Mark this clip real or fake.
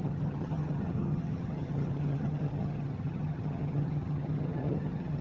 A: fake